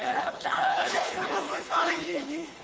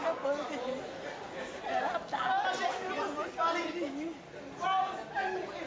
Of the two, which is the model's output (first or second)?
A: first